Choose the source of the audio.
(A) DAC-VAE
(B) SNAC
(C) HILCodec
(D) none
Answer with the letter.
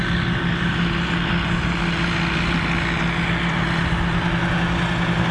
D